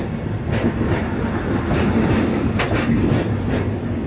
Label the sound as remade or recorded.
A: recorded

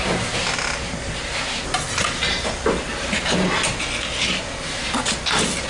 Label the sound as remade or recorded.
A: recorded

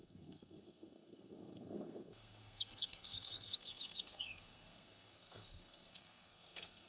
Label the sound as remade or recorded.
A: remade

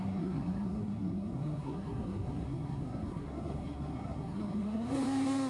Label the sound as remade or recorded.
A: remade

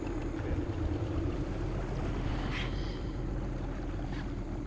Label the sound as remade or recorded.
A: recorded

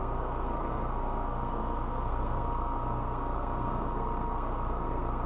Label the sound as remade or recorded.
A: remade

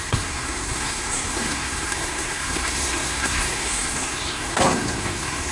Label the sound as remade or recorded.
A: remade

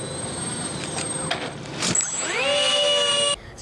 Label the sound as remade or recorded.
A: recorded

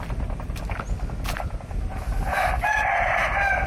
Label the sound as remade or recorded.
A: recorded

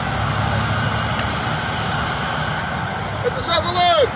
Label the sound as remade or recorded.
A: recorded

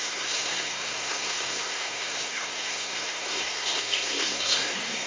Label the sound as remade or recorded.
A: remade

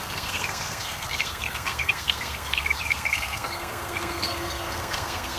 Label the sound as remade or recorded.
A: remade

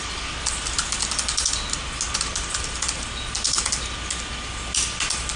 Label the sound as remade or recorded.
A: recorded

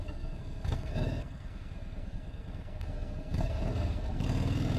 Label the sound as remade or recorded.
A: remade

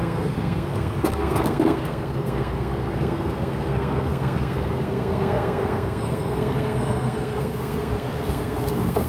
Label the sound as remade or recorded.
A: remade